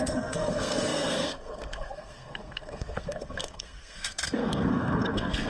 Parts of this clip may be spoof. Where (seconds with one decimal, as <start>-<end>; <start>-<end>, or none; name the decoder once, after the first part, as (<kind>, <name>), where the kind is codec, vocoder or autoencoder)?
0.0-5.5 (codec, SNAC)